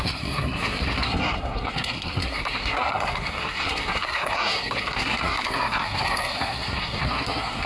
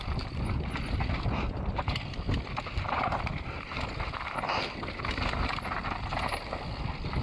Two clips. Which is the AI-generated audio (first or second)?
first